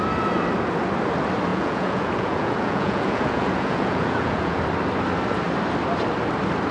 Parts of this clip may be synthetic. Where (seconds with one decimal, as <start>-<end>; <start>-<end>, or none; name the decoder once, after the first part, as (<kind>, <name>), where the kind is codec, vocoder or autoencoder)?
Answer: 1.5-4.6 (vocoder, Vocos)